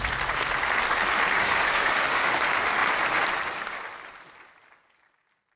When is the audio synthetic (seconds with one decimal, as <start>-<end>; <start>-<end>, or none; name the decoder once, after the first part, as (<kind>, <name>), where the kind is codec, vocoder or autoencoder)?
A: 1.4-2.3 (autoencoder, DAC-VAE)